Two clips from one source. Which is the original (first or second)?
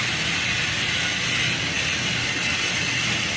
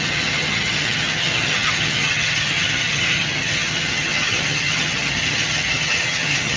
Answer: first